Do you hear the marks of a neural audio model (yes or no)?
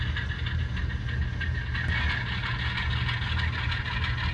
no